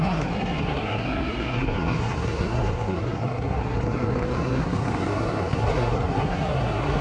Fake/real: fake